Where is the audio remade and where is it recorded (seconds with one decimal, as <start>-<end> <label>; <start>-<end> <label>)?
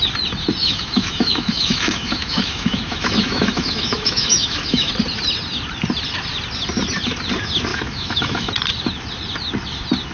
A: 0.0-0.6 recorded; 0.6-4.9 remade; 4.9-7.7 recorded; 7.7-8.5 remade; 8.5-10.1 recorded